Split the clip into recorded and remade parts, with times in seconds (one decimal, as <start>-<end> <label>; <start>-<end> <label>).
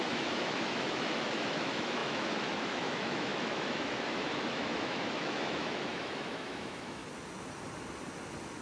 0.0-7.0 remade; 7.0-8.6 recorded